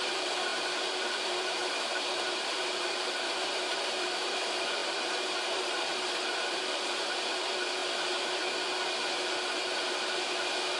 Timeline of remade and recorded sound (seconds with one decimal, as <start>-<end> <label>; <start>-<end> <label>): 0.0-7.8 remade; 7.8-10.8 recorded

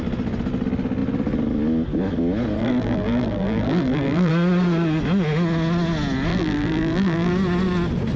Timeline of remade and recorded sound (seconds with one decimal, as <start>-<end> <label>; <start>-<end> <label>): 0.0-2.6 recorded; 2.6-4.3 remade; 4.3-6.3 recorded; 6.3-7.3 remade; 7.3-8.2 recorded

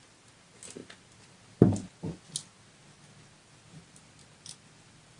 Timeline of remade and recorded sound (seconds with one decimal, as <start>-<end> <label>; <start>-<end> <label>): 0.0-5.2 recorded

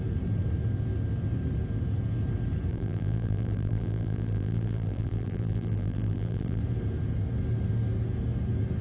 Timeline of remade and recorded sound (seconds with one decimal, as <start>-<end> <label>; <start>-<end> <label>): 0.0-2.7 recorded; 2.7-6.6 remade; 6.6-8.8 recorded

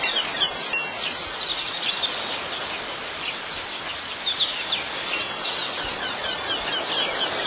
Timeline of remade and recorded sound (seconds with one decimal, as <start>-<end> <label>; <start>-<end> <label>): 0.0-2.6 recorded; 2.6-4.1 remade; 4.1-5.9 recorded; 5.9-6.8 remade; 6.8-7.5 recorded